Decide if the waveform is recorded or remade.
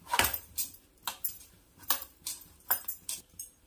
remade